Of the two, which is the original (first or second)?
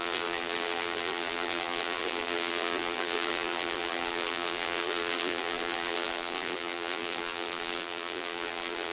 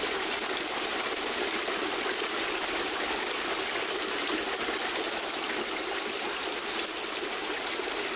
second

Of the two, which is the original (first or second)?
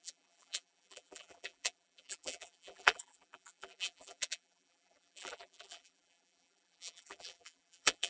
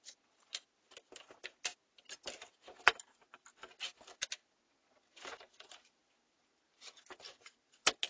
second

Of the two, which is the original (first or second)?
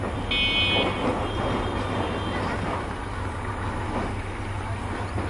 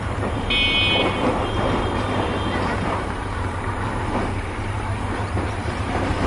first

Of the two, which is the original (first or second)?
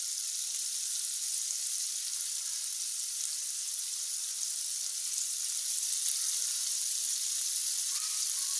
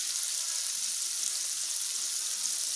second